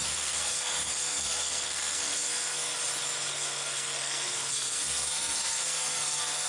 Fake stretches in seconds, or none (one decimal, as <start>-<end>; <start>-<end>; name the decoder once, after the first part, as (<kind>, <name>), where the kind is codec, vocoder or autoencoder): 0.0-2.7 (codec, SNAC); 3.3-6.5